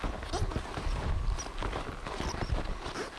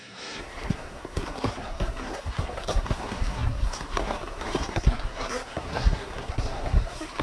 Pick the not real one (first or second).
second